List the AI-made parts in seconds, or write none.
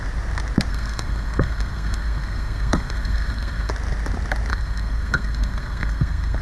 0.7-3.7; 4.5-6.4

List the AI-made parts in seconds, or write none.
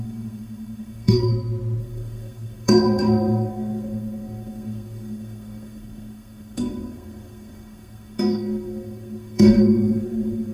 0.0-1.3; 1.8-10.5